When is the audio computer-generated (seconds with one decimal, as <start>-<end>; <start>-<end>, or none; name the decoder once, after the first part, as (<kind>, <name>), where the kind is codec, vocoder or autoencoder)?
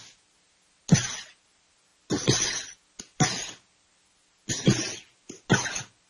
none